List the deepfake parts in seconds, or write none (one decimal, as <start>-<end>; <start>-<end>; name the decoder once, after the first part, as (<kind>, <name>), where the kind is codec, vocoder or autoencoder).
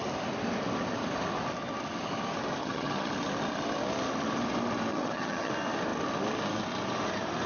2.6-3.1 (vocoder, HiFi-GAN); 4.9-5.5